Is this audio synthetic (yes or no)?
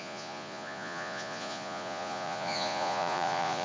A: yes